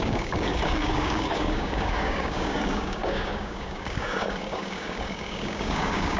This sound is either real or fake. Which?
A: fake